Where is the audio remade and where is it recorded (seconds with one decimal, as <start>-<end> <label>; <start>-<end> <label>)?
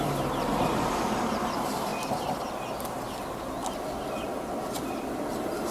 0.0-1.9 remade; 1.9-5.3 recorded; 5.3-5.7 remade